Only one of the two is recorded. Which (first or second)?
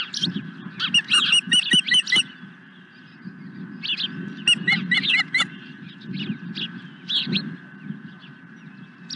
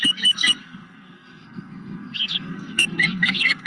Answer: first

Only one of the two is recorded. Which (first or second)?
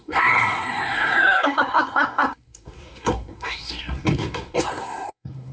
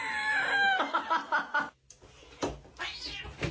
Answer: second